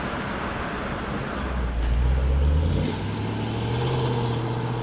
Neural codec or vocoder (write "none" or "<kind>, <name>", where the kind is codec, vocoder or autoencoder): none